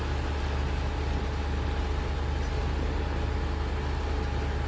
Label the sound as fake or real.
real